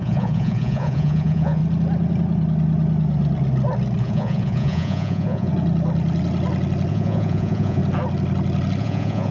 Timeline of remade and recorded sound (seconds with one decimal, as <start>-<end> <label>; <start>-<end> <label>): 0.0-1.6 remade; 1.6-4.0 recorded; 4.0-5.5 remade; 5.5-6.9 recorded; 6.9-7.8 remade; 7.8-8.8 recorded; 8.8-9.3 remade